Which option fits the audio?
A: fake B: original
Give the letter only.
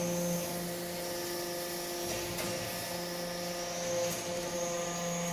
B